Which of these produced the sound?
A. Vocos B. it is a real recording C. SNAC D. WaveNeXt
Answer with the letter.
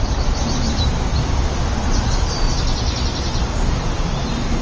B